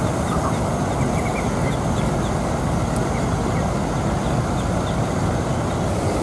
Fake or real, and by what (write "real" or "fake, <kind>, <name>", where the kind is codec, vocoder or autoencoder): real